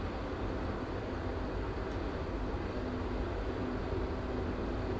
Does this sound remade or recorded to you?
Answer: recorded